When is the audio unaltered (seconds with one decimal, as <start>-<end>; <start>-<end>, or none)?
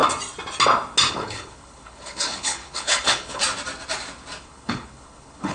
0.0-1.1; 3.4-4.4